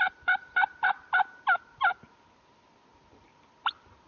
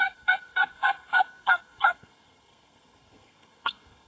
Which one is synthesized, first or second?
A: second